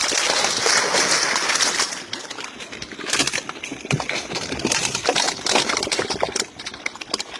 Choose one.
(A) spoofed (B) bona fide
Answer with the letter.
B